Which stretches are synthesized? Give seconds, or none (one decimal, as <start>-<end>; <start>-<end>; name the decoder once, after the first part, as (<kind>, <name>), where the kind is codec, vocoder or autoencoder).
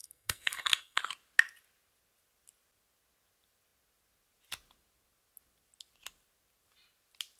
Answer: 0.0-1.0 (codec, SNAC)